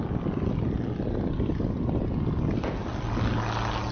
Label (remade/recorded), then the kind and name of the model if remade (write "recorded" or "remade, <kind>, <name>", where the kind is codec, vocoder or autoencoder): recorded